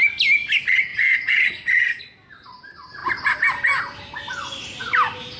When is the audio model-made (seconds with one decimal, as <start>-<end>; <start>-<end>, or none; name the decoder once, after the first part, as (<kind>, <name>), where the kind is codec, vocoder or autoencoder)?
0.9-2.0 (vocoder, Vocos)

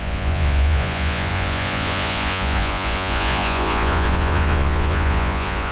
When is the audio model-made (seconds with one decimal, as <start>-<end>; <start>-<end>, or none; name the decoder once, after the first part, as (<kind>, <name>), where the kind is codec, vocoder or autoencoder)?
0.0-5.7 (vocoder, Vocos)

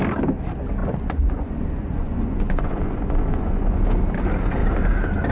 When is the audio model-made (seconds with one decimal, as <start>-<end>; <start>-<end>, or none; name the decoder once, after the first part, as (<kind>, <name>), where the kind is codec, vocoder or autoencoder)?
0.8-3.8 (vocoder, Vocos)